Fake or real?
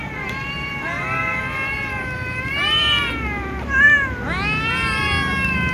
real